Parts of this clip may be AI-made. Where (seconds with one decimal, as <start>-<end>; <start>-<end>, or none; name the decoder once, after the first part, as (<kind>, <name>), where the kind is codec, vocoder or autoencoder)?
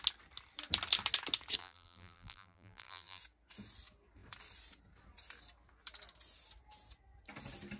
1.6-3.2 (vocoder, BigVGAN v2)